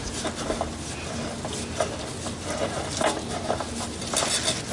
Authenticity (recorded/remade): recorded